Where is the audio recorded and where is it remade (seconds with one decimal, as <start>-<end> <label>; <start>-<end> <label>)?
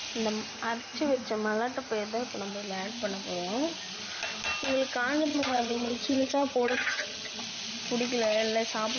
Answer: 0.0-5.3 recorded; 5.3-7.4 remade; 7.4-9.0 recorded